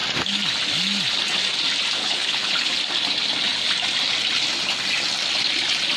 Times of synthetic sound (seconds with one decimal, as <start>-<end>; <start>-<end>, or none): 2.0-2.7